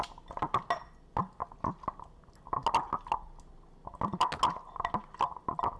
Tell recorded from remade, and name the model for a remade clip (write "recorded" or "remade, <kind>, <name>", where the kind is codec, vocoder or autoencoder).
recorded